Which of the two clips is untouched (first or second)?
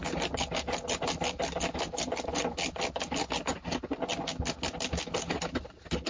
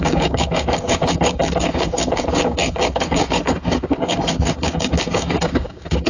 first